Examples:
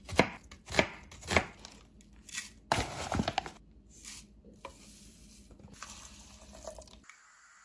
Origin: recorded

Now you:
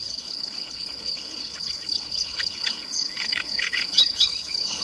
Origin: remade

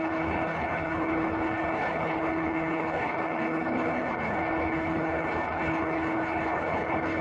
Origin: remade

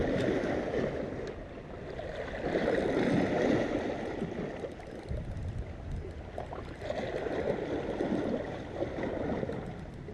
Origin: recorded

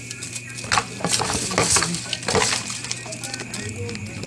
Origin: recorded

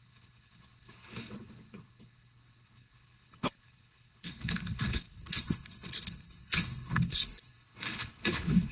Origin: remade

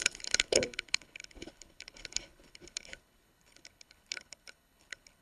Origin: remade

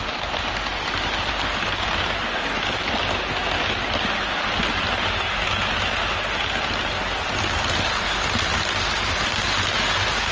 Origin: recorded